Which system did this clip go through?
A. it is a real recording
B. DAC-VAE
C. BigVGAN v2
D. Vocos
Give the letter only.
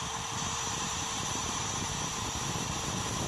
C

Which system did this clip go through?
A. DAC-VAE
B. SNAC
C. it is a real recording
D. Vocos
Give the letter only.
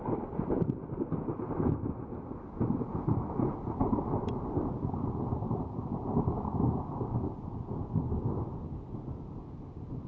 C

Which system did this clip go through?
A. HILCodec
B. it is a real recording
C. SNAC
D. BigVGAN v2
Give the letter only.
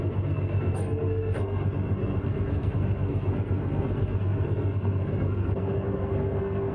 C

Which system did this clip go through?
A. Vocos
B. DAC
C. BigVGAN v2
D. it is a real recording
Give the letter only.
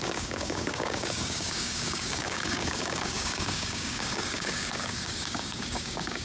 B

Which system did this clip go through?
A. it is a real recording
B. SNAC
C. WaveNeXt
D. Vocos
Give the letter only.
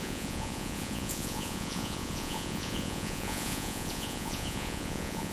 D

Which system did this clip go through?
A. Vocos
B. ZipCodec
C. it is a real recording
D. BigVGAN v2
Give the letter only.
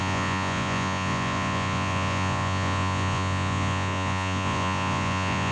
A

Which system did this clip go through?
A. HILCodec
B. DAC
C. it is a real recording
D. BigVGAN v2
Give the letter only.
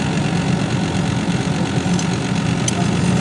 C